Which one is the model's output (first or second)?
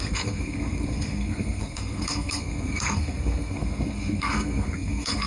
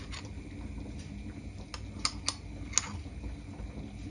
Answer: first